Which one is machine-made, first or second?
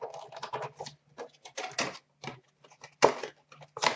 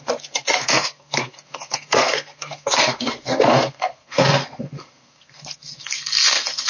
second